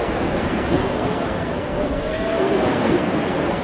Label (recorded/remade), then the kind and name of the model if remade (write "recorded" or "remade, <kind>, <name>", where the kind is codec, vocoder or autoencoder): remade, codec, SNAC